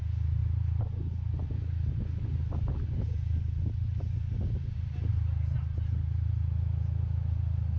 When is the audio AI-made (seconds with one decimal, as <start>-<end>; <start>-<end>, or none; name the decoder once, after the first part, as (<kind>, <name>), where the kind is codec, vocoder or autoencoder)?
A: none